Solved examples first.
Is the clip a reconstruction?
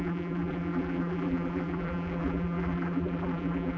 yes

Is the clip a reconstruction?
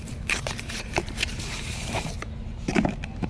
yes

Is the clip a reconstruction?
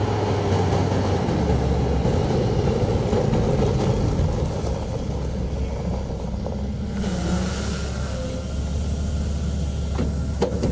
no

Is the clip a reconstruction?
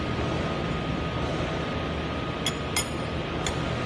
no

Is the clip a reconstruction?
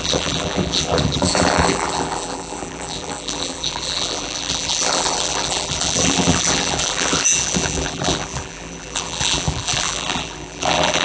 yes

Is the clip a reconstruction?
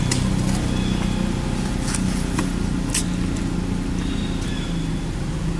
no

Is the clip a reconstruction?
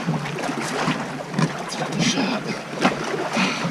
no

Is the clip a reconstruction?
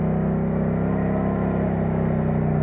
no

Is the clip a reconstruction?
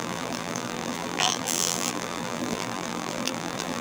yes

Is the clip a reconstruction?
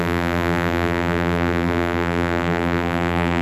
yes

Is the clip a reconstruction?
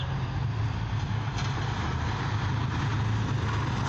no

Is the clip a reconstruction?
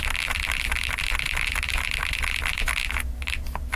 no